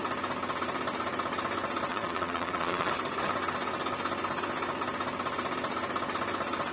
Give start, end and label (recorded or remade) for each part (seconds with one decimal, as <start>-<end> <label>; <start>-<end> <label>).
0.0-1.9 recorded; 1.9-2.9 remade; 2.9-6.7 recorded